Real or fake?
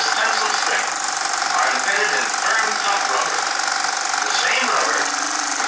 real